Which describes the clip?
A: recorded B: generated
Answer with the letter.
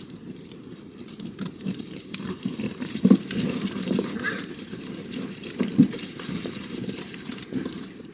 B